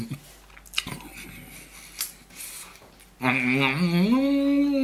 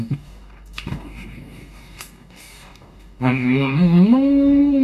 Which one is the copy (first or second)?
second